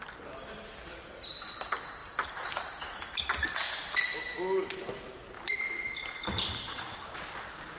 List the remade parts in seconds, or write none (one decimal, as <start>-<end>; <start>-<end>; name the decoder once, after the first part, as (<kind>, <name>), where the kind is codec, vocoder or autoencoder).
6.7-7.2 (vocoder, Vocos)